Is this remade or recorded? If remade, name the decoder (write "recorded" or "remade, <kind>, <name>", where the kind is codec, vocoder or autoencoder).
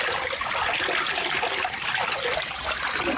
recorded